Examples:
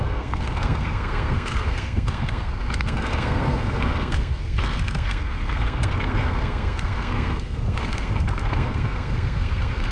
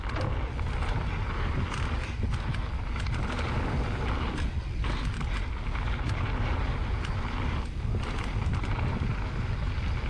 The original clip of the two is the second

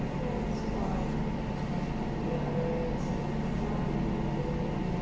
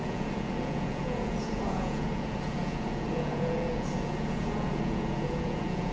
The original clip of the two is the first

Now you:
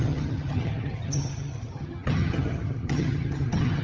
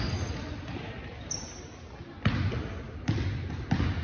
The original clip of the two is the second